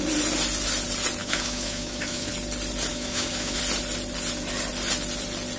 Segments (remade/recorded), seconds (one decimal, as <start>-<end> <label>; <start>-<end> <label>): 0.0-1.2 recorded; 1.2-2.3 remade; 2.3-2.9 recorded; 2.9-3.6 remade; 3.6-5.6 recorded